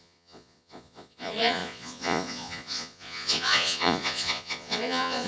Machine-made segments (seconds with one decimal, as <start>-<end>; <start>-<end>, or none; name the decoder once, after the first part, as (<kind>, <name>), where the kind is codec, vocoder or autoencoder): 0.0-5.3 (vocoder, Vocos)